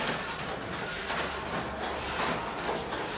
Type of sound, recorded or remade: recorded